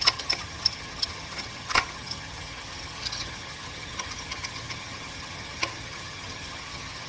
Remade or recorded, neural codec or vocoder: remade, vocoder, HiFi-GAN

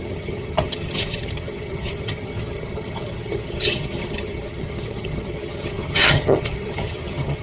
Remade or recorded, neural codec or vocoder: remade, vocoder, HiFi-GAN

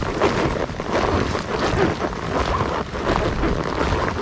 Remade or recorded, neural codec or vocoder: recorded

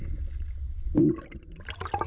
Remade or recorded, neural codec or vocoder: recorded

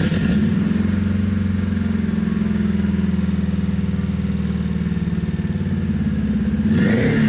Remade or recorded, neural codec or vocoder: recorded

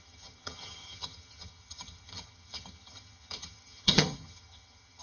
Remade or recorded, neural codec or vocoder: remade, vocoder, HiFi-GAN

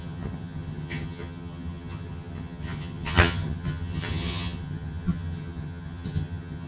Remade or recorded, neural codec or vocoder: remade, vocoder, HiFi-GAN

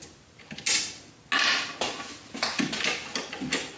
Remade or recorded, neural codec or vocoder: recorded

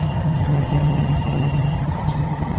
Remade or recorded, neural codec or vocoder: remade, vocoder, HiFi-GAN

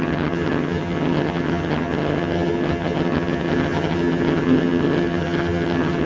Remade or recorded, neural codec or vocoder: remade, vocoder, HiFi-GAN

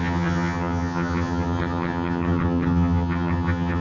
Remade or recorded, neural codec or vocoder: remade, vocoder, HiFi-GAN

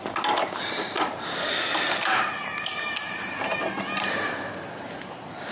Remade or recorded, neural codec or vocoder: recorded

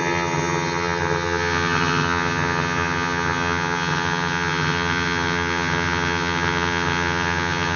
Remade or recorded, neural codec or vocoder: remade, vocoder, HiFi-GAN